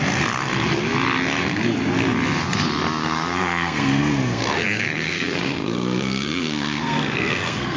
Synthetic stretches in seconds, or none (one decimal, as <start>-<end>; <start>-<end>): 3.0-7.8